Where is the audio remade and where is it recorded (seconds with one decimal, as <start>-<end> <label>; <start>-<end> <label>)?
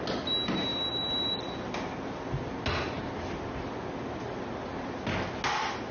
0.0-5.9 recorded